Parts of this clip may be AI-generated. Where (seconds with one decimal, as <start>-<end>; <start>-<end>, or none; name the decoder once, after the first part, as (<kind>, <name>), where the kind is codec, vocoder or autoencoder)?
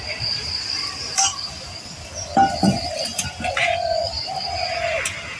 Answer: 0.4-3.6 (vocoder, BigVGAN v2)